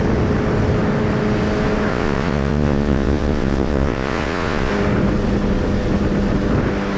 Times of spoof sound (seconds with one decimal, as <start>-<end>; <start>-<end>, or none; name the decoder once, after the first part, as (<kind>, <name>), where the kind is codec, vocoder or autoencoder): 1.9-4.7 (vocoder, Vocos)